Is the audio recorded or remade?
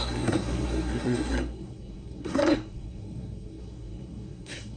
remade